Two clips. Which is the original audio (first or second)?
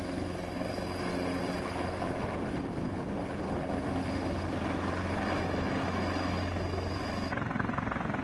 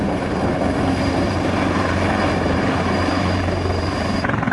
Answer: first